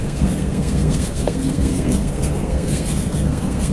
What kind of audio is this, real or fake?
fake